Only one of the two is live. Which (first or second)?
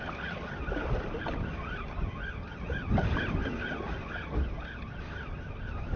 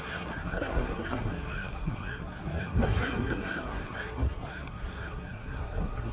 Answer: first